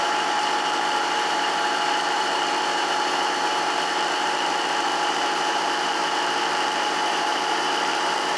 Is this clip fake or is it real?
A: fake